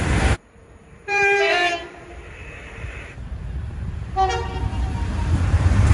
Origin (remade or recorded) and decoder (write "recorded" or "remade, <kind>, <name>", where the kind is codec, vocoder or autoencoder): remade, vocoder, BigVGAN v2